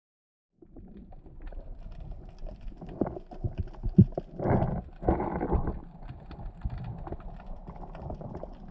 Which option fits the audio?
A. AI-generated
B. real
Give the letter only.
B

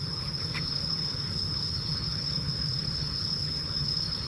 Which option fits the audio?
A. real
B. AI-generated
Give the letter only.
B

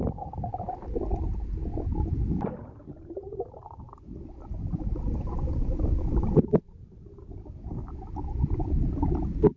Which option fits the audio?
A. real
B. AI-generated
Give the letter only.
A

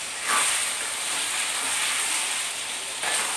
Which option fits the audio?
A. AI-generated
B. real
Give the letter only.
B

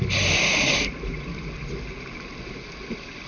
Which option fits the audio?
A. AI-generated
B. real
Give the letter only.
B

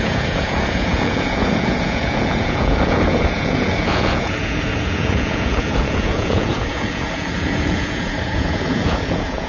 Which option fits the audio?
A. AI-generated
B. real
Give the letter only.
A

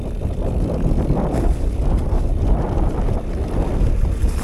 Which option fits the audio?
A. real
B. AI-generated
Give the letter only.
A